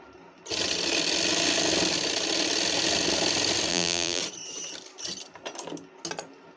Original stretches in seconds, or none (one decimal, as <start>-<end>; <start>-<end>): 0.0-3.7; 4.2-6.6